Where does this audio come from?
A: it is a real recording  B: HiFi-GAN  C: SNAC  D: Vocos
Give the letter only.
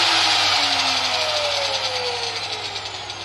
A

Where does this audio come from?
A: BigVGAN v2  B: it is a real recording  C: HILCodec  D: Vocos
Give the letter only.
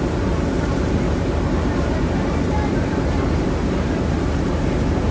A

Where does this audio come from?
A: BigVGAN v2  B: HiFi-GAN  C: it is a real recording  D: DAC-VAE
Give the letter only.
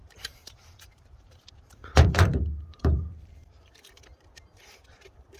A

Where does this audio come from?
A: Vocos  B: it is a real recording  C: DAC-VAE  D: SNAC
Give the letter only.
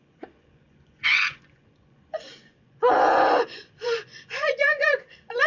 A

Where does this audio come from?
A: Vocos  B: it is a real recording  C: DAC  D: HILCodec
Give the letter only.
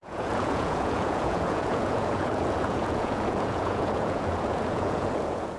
A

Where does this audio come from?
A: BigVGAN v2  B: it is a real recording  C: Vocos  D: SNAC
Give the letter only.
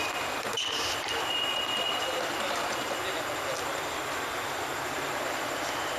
B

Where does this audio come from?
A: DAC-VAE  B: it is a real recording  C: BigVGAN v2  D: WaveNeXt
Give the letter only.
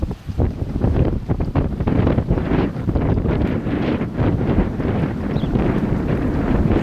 C